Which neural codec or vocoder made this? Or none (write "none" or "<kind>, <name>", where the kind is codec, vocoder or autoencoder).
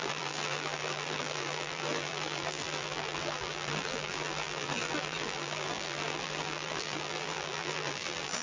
vocoder, BigVGAN v2